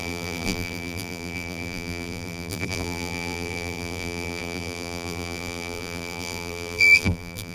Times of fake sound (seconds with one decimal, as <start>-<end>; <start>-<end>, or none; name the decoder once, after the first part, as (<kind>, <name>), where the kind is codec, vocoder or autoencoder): 0.0-7.5 (vocoder, BigVGAN v2)